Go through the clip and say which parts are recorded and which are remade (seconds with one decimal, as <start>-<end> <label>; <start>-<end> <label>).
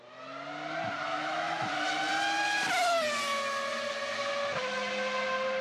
0.0-1.1 recorded; 1.1-1.7 remade; 1.7-5.6 recorded